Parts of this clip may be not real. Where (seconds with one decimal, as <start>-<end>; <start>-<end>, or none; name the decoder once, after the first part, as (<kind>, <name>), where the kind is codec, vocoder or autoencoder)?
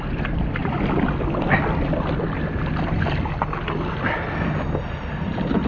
none